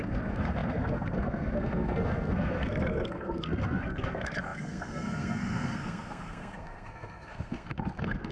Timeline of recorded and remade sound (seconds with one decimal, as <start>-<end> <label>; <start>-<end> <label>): 0.0-8.3 remade